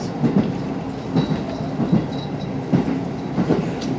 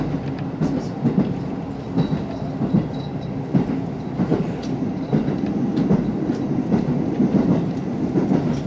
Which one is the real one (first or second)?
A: first